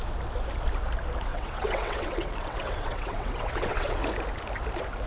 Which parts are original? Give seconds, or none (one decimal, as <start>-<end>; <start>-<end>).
0.0-1.3; 4.0-5.1